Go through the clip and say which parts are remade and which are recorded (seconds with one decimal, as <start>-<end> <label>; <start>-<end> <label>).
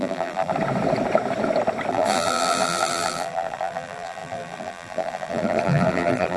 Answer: 0.0-0.5 remade; 0.5-1.9 recorded; 1.9-6.4 remade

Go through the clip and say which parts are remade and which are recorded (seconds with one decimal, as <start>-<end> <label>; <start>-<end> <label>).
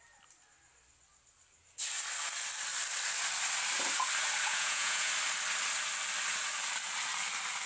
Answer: 0.0-4.5 recorded; 4.5-5.1 remade; 5.1-7.7 recorded